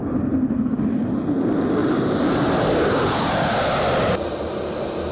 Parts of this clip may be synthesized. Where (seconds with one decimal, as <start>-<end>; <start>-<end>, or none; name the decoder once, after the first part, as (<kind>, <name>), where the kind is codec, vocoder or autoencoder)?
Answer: 0.0-0.7 (vocoder, BigVGAN v2); 1.8-2.9